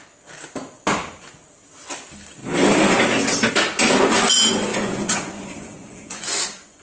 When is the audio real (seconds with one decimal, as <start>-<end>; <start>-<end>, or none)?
0.0-4.7